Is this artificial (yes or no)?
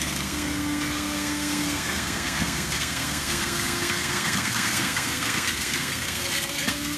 yes